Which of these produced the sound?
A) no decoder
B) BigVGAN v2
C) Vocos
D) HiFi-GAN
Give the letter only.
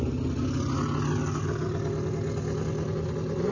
A